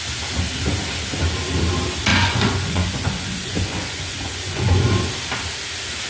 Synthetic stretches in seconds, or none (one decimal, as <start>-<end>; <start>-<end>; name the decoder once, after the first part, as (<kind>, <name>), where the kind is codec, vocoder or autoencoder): 2.1-4.9 (vocoder, Vocos)